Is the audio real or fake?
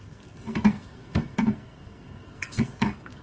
fake